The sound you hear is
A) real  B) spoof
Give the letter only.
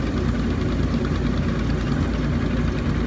A